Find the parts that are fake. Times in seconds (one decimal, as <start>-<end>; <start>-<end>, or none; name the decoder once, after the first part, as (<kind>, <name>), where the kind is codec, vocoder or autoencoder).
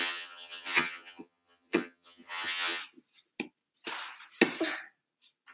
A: 0.0-2.8 (vocoder, HiFi-GAN)